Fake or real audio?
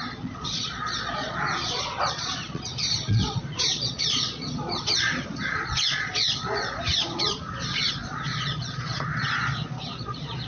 fake